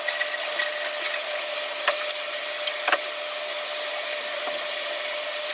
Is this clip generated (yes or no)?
no